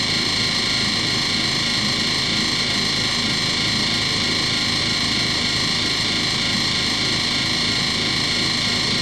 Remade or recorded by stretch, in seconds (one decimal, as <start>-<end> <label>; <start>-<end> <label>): 0.0-9.0 recorded